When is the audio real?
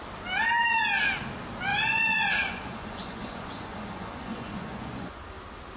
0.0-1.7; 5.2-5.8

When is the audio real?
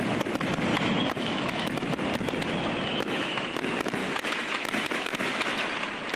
0.0-0.7; 1.7-2.9; 3.6-4.0; 5.1-6.2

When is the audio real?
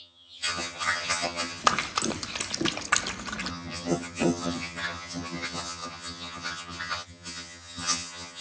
1.6-3.5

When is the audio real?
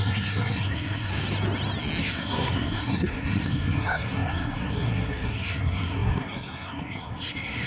1.1-2.0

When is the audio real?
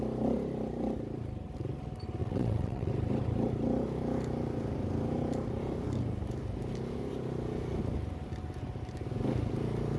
0.0-2.2; 2.9-10.0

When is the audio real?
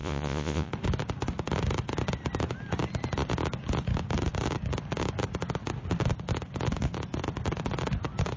0.7-8.4